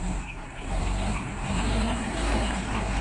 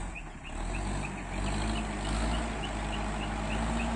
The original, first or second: second